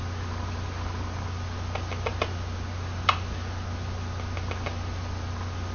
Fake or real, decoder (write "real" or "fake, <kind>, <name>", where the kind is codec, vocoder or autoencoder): real